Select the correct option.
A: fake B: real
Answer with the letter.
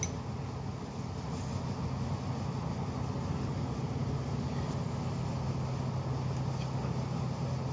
B